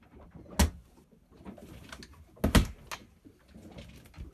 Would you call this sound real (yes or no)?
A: yes